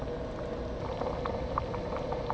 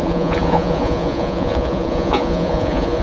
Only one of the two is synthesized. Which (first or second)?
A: second